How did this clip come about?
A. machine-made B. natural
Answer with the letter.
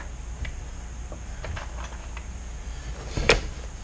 B